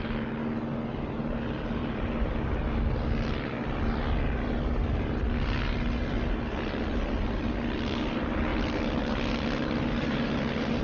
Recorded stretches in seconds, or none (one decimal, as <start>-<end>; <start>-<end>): 0.0-10.8